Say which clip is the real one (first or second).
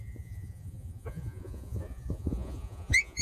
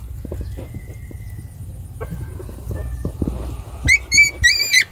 second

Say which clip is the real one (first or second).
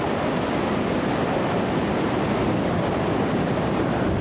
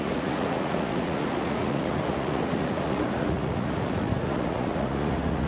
first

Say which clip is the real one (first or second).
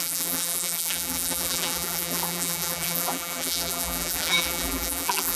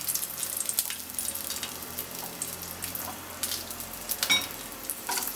second